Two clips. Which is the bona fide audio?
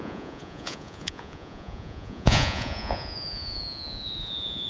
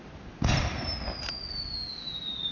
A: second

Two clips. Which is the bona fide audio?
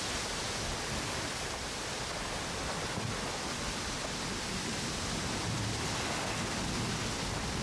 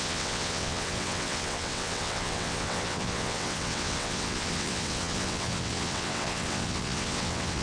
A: first